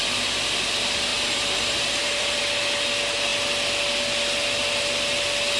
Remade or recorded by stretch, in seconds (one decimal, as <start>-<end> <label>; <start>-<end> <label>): 0.0-1.1 recorded; 1.1-2.4 remade; 2.4-5.6 recorded